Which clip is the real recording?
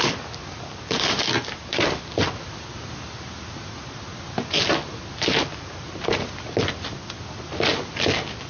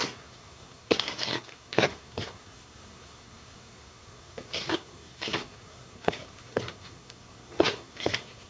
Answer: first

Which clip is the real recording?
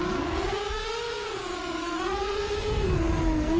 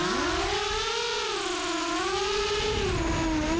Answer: second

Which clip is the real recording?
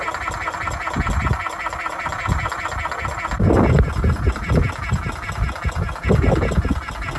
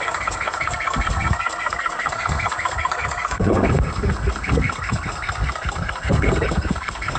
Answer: first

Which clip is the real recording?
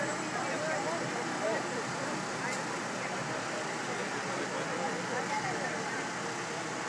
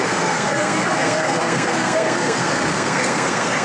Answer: first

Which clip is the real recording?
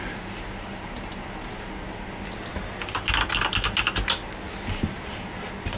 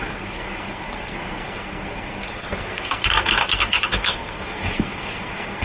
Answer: first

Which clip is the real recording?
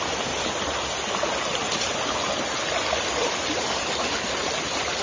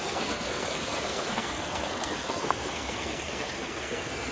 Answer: first